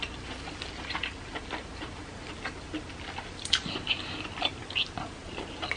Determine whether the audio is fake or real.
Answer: real